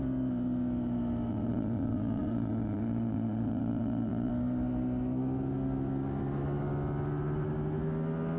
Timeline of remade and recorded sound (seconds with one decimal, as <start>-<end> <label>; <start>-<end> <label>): 0.0-1.3 recorded; 1.3-4.3 remade; 4.3-8.4 recorded